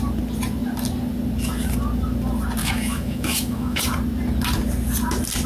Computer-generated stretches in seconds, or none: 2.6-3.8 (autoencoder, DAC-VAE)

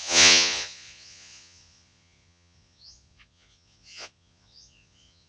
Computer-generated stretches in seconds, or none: 0.0-5.3 (vocoder, Vocos)

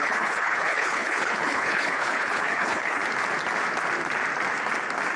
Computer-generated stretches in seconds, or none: 0.0-3.0 (codec, HILCodec)

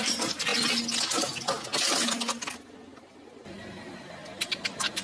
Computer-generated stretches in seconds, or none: 0.0-0.5 (vocoder, BigVGAN v2); 3.2-5.0

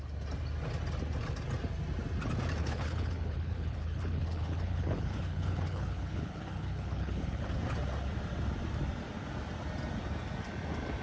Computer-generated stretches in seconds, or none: 2.6-7.5 (codec, HILCodec)